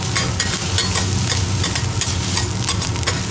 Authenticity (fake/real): real